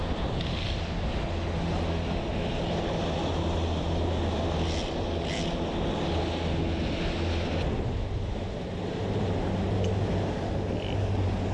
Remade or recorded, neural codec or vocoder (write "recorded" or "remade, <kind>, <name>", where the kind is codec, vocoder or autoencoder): recorded